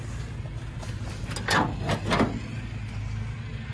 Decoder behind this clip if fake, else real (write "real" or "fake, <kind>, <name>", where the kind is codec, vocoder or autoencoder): real